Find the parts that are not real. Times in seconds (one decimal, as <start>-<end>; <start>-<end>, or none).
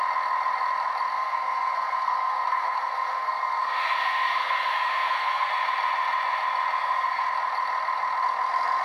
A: 1.1-5.5; 6.8-7.3